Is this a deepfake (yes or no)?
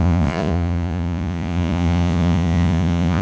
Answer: yes